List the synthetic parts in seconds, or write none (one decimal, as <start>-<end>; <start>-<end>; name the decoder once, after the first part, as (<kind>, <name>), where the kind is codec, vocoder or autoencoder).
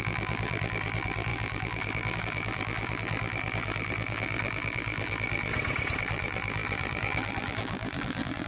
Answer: 0.0-5.5 (vocoder, BigVGAN v2); 6.0-8.5